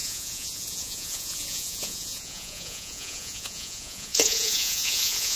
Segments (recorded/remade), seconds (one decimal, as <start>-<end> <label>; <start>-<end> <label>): 0.0-5.4 remade